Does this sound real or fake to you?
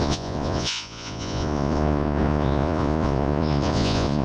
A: fake